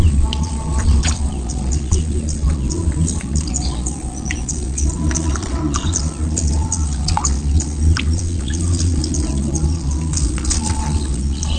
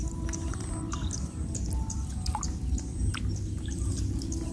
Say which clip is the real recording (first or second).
second